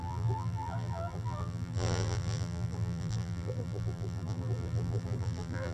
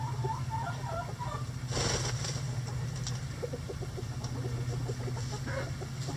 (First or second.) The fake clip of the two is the first